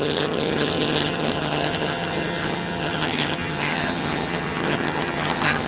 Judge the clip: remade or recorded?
remade